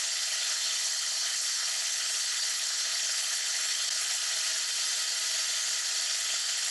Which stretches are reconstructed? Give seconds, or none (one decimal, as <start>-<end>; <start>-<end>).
0.0-4.2; 6.1-6.7